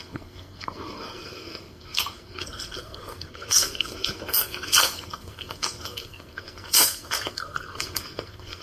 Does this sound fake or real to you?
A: fake